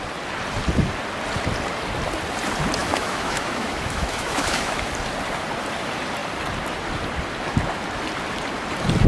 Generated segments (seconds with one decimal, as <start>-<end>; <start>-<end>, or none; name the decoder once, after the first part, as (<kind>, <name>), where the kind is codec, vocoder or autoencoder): 2.8-4.9 (autoencoder, DAC-VAE)